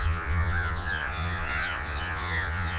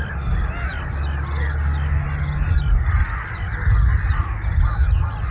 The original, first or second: second